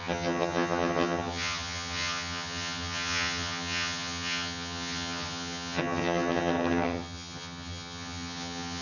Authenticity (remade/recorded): remade